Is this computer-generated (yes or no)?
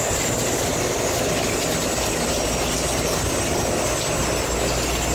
no